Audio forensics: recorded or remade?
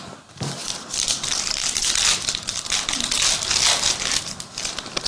remade